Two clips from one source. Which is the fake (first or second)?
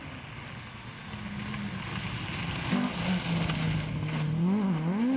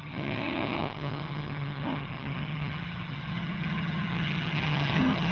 second